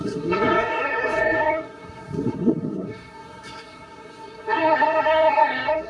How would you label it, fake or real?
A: fake